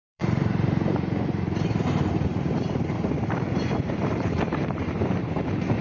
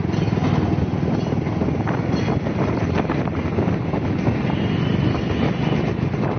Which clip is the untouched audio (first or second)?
second